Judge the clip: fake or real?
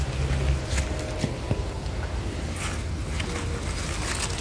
real